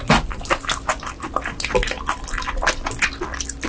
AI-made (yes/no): no